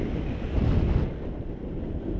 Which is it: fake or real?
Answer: real